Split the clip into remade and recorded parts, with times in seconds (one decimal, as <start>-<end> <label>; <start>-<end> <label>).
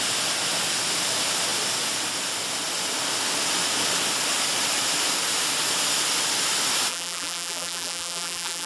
0.0-6.9 recorded; 6.9-8.7 remade